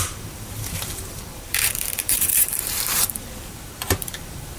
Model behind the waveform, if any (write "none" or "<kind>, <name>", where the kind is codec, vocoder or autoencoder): vocoder, BigVGAN v2